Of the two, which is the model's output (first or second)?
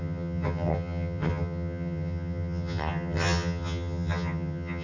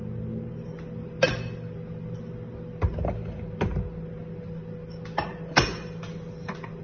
first